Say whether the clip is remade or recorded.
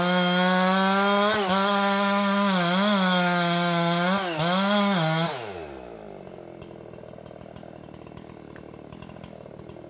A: recorded